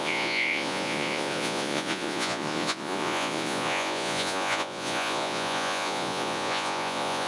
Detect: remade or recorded remade